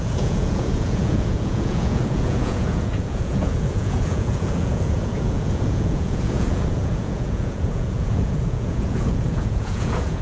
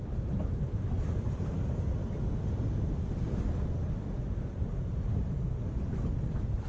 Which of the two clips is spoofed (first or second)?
first